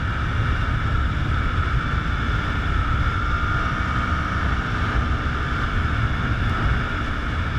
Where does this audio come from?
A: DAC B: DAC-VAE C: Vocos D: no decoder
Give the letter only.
D